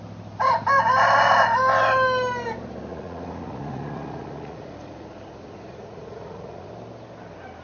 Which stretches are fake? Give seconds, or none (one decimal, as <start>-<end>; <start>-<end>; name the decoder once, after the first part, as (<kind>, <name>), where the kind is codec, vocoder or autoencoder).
2.9-6.7 (vocoder, Vocos)